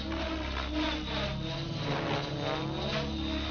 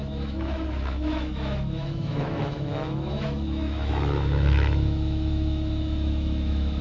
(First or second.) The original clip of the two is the first